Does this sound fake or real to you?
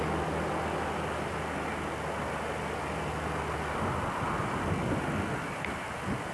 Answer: real